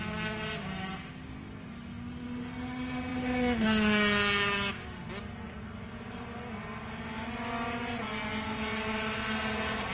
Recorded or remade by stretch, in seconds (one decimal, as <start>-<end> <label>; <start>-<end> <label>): 0.0-9.9 recorded